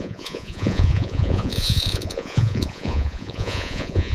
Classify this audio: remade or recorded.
remade